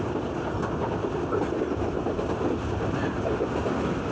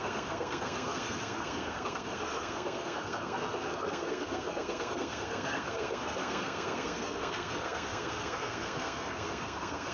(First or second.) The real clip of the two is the first